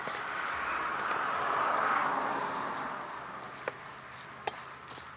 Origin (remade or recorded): recorded